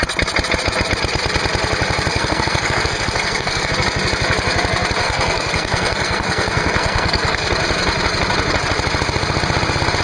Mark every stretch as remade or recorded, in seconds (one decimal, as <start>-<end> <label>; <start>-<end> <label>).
0.0-2.1 recorded; 2.1-3.7 remade; 3.7-5.0 recorded; 5.0-7.5 remade; 7.5-10.0 recorded